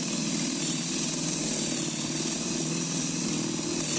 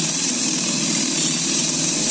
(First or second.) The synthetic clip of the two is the second